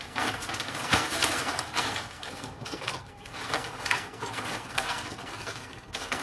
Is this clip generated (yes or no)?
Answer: yes